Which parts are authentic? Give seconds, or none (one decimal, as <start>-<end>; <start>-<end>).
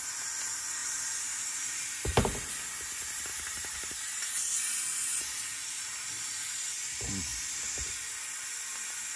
0.0-0.8; 2.5-3.3; 3.9-5.5; 6.3-9.2